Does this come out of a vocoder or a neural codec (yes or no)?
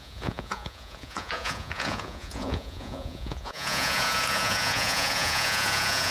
yes